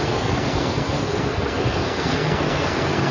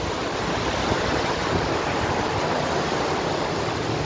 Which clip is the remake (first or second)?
first